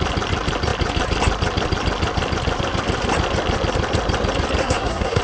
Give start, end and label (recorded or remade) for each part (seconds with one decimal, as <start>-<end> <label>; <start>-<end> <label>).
0.0-4.6 recorded; 4.6-5.2 remade

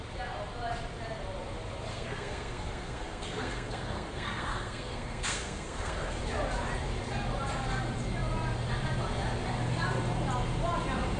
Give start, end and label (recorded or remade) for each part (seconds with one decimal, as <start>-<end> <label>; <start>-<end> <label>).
0.0-1.9 recorded; 1.9-6.2 remade; 6.2-11.2 recorded